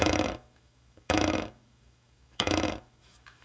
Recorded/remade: remade